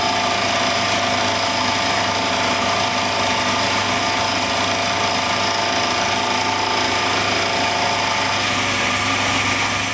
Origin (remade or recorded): recorded